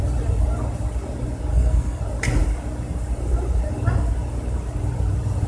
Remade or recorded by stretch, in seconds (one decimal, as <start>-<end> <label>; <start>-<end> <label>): 0.0-1.5 recorded; 1.5-2.0 remade; 2.0-5.5 recorded